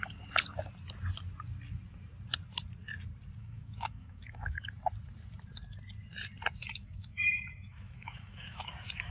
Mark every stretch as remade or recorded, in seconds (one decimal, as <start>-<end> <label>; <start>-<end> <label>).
0.0-3.4 recorded; 3.4-4.6 remade; 4.6-6.6 recorded; 6.6-8.7 remade; 8.7-9.1 recorded